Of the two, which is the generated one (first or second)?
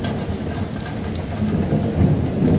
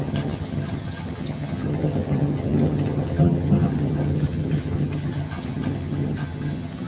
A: second